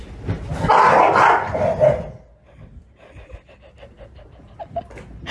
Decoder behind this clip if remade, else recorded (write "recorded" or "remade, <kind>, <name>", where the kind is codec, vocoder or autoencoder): recorded